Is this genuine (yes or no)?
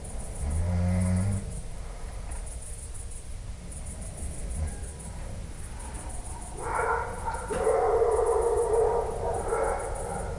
yes